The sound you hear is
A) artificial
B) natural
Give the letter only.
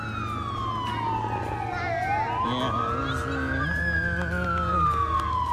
B